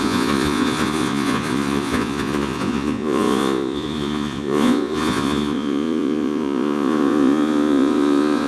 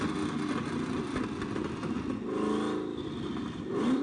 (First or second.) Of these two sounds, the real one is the second